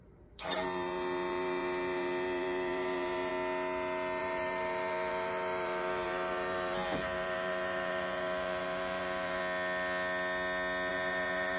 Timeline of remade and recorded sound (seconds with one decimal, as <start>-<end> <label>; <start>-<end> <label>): 0.0-3.3 remade; 3.3-4.2 recorded; 4.2-9.4 remade; 9.4-10.9 recorded; 10.9-11.6 remade